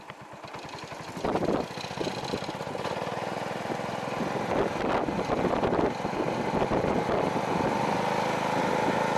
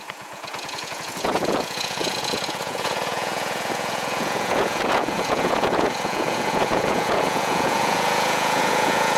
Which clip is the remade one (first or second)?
second